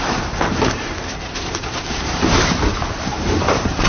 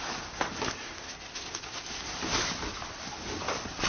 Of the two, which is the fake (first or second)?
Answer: first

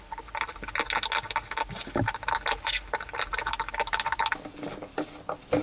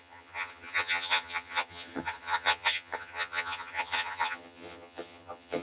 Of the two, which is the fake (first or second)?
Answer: second